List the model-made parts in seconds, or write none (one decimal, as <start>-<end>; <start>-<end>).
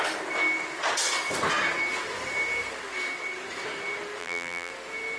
4.2-4.7